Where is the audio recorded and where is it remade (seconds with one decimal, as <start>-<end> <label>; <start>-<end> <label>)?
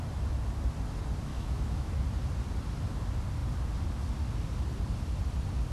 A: 0.0-1.3 recorded; 1.3-1.9 remade; 1.9-5.7 recorded